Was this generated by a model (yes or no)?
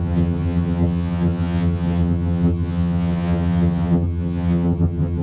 yes